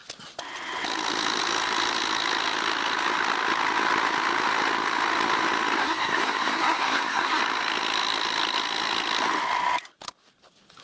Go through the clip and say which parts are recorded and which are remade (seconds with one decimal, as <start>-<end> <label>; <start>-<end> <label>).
0.0-5.8 recorded; 5.8-7.4 remade; 7.4-10.8 recorded